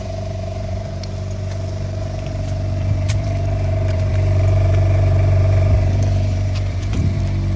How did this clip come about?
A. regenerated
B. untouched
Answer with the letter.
A